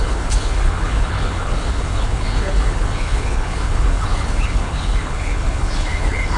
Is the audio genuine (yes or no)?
no